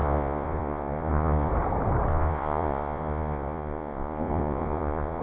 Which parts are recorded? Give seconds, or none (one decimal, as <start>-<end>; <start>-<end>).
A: 1.5-2.1